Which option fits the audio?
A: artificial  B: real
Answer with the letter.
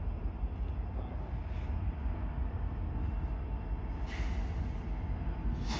B